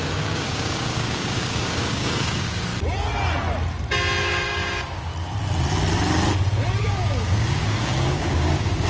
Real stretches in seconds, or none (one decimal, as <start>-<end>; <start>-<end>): 2.7-4.2; 5.1-6.8